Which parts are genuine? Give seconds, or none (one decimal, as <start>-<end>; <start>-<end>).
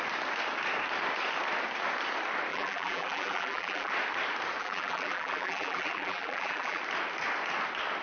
0.0-2.5; 3.9-4.6; 6.8-8.0